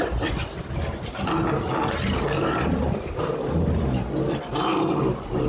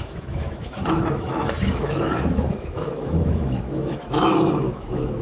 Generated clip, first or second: second